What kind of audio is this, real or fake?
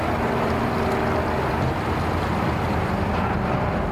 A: real